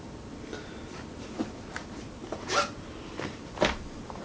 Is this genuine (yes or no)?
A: yes